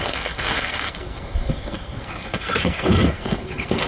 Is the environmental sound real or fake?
fake